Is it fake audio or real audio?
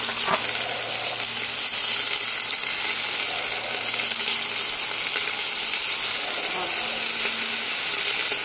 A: real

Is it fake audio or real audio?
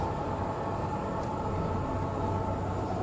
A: real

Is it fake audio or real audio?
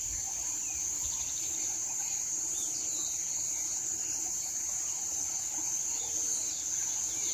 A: fake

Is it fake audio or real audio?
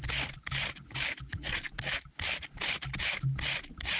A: real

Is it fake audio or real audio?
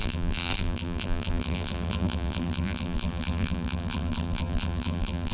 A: fake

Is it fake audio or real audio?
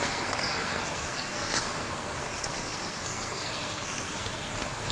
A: fake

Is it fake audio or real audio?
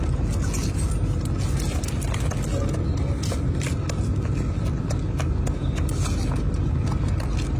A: real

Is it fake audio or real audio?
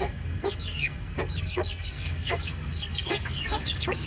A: fake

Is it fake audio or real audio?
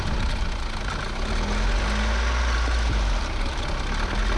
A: real